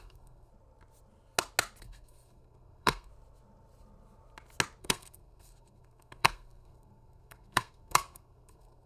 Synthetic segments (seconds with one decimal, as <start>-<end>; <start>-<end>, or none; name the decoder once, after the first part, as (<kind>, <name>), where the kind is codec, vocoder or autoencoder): 0.0-0.5 (codec, SNAC); 1.8-3.1; 4.8-8.9

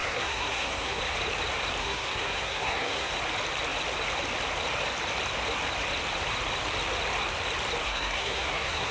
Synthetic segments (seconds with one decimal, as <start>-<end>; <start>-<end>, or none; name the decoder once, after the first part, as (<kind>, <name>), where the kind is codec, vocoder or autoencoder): 0.0-1.0 (codec, SNAC); 1.8-3.1; 7.8-8.9

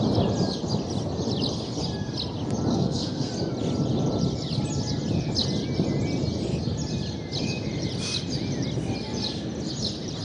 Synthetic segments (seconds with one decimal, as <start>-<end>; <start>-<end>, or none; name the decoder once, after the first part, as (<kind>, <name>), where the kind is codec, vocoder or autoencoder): 2.7-3.3 (codec, SNAC)

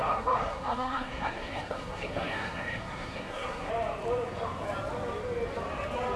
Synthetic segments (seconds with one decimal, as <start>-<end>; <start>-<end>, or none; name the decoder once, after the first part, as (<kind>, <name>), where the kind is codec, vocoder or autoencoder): 0.0-3.7 (codec, SNAC)

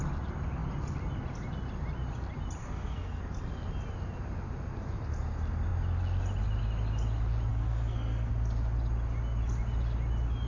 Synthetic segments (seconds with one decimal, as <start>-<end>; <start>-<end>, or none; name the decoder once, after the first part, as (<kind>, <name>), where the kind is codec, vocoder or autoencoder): 2.6-3.2 (codec, SNAC); 7.5-8.3